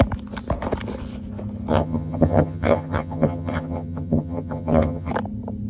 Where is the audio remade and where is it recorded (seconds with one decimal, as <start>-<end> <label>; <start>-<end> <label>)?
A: 0.0-1.7 recorded; 1.7-5.1 remade; 5.1-5.7 recorded